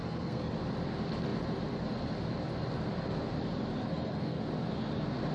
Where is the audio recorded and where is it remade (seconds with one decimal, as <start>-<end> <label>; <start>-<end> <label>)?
0.0-0.5 remade; 0.5-3.8 recorded; 3.8-4.4 remade; 4.4-5.3 recorded